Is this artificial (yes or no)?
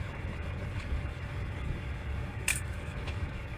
yes